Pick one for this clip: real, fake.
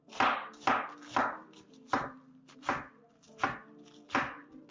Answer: real